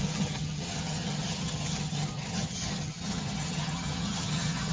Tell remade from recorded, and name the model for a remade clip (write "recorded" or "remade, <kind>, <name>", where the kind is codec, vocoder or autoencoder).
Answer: remade, vocoder, HiFi-GAN